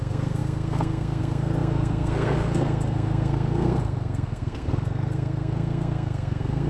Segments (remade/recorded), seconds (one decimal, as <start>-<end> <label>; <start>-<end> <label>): 0.0-6.7 remade